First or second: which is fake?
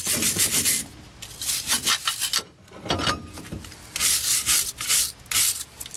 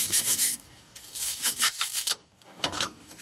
second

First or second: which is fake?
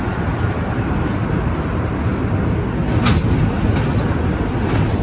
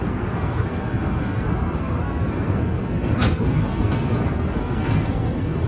second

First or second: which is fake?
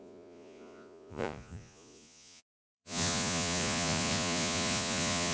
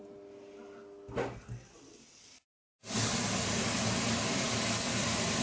first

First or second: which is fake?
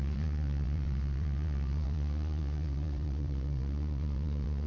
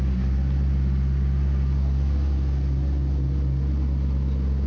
first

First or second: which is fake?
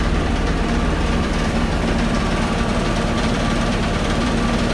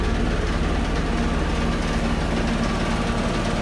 first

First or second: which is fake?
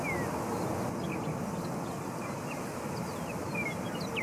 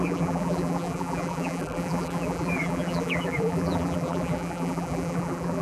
second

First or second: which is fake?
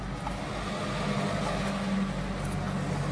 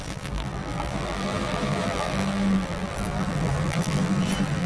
second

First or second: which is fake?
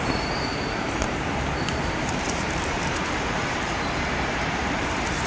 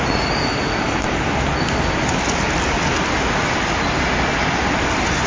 first